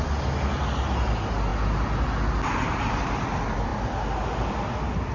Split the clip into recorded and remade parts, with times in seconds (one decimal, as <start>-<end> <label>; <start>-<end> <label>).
0.0-5.1 recorded